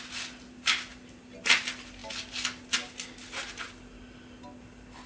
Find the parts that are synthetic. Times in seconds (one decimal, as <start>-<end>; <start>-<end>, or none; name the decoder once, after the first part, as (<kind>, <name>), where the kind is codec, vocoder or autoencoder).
none